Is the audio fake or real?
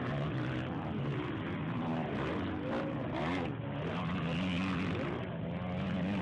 real